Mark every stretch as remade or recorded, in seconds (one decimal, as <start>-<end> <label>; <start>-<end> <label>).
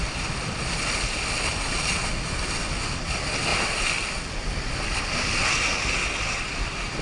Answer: 0.0-7.0 recorded